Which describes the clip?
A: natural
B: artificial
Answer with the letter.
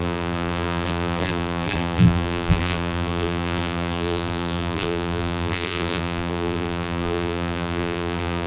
B